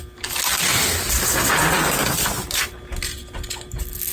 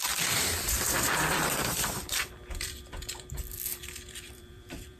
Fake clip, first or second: second